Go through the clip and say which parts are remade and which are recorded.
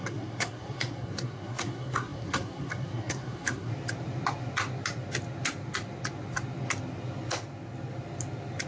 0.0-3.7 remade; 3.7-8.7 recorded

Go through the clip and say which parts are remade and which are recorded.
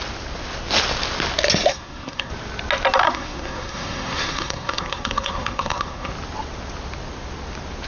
0.0-1.7 recorded; 1.7-2.3 remade; 2.3-3.0 recorded; 3.0-6.1 remade; 6.1-7.9 recorded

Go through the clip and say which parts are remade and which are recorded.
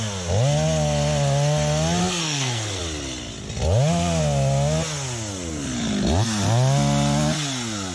0.0-2.0 recorded; 2.0-2.8 remade; 2.8-7.9 recorded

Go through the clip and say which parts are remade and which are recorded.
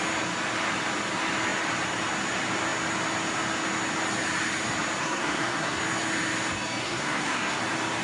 0.0-5.0 recorded; 5.0-5.8 remade; 5.8-6.8 recorded; 6.8-7.6 remade; 7.6-8.0 recorded